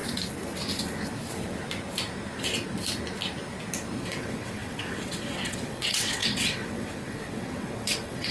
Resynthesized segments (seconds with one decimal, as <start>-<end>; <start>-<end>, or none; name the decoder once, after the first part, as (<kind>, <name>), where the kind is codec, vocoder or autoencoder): 4.0-8.3 (vocoder, WaveNeXt)